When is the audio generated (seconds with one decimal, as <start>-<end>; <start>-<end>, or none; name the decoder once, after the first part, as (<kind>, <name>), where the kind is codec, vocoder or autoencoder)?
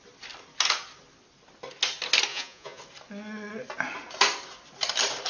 2.3-2.8 (vocoder, Vocos)